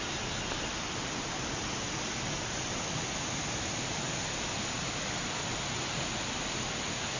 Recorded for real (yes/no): yes